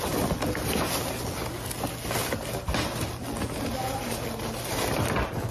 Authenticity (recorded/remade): recorded